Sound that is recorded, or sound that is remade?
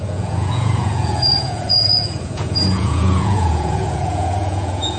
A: remade